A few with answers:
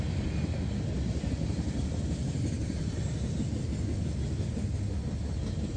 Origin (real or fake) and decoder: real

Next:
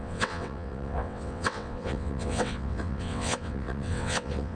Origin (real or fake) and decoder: fake, vocoder, WaveNeXt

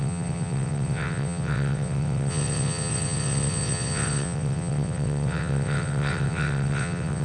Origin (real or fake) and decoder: fake, vocoder, WaveNeXt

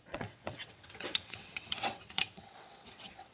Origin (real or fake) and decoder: fake, vocoder, WaveNeXt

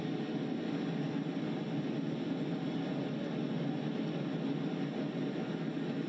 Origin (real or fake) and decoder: real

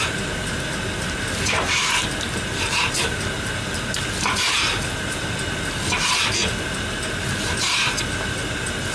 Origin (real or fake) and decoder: real